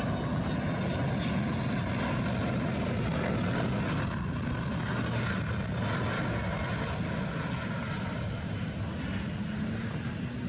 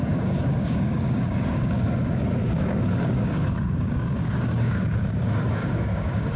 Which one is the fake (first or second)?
second